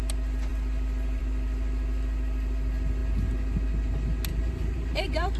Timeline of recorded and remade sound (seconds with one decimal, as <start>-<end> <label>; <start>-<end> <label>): 0.0-4.3 recorded; 4.3-5.4 remade